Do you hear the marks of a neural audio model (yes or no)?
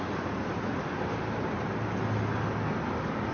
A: no